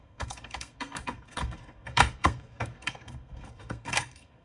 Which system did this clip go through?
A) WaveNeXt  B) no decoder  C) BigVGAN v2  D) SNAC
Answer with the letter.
D